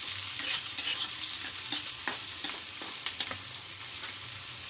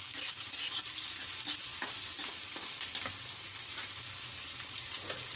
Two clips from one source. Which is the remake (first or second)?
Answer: first